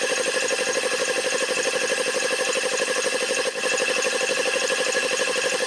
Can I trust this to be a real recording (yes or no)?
yes